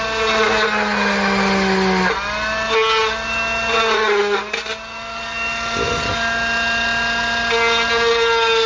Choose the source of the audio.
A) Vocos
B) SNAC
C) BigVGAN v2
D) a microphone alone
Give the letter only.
D